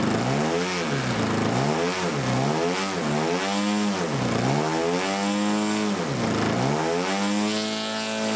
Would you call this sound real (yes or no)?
yes